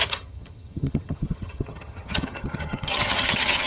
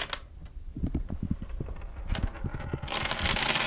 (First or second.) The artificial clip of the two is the first